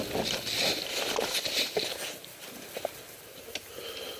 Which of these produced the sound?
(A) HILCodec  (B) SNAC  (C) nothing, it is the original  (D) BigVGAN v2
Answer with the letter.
C